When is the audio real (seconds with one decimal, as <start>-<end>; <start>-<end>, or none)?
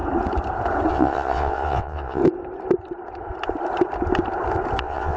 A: 0.0-0.9; 2.2-4.8